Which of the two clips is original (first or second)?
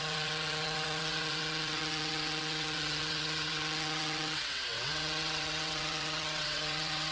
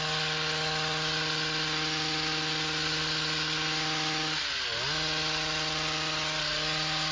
second